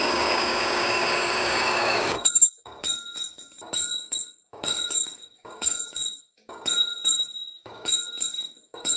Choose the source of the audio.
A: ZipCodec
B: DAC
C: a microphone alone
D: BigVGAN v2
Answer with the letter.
B